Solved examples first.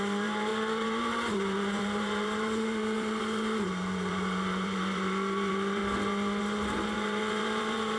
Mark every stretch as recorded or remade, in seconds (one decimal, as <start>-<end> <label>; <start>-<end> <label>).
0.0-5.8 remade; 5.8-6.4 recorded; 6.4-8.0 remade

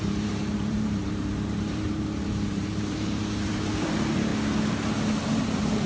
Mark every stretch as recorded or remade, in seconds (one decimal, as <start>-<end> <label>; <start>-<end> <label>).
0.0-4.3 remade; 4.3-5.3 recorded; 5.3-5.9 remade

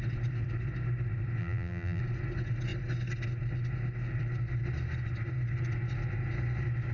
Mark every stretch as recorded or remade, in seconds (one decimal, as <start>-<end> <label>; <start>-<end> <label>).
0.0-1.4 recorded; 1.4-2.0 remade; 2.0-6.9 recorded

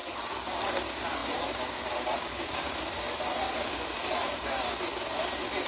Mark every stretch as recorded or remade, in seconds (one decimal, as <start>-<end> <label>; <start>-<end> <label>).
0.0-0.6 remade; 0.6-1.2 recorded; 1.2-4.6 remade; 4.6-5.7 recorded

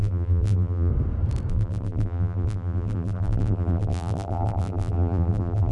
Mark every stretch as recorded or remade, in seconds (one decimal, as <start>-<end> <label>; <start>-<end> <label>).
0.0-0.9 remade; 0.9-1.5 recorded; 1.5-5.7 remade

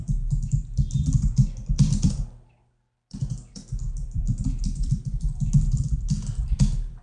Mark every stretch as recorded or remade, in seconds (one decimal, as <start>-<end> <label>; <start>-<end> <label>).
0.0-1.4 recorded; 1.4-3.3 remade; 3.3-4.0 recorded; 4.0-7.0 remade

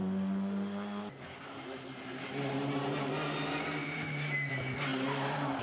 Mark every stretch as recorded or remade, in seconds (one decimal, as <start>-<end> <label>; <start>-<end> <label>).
0.0-3.8 recorded; 3.8-4.5 remade; 4.5-4.9 recorded; 4.9-5.6 remade

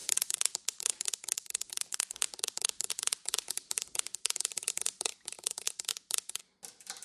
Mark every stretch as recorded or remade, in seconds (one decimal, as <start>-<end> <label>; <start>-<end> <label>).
0.0-2.9 remade; 2.9-7.0 recorded